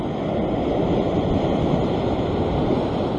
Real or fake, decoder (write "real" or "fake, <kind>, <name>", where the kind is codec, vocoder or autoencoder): real